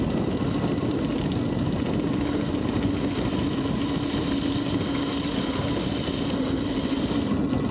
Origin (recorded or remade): recorded